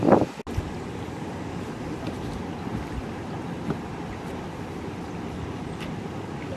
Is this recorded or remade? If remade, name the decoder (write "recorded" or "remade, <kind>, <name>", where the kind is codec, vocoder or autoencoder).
recorded